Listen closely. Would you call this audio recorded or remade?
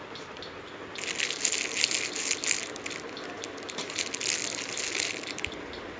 recorded